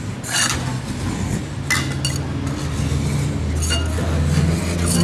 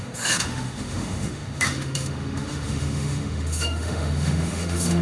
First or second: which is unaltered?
first